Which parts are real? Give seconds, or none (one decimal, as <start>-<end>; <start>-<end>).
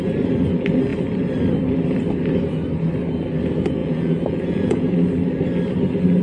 0.0-3.8; 4.9-6.2